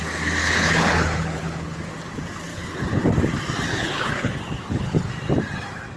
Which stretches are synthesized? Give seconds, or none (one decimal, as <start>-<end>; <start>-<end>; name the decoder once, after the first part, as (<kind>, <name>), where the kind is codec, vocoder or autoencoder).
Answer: 0.4-1.8 (codec, HILCodec); 2.5-3.0; 3.7-5.1